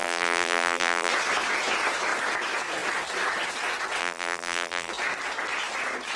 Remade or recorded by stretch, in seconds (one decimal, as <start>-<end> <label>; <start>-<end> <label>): 0.0-1.1 remade; 1.1-4.0 recorded; 4.0-4.9 remade; 4.9-6.2 recorded